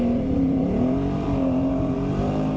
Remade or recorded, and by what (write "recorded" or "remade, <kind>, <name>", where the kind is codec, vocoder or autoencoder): remade, vocoder, BigVGAN v2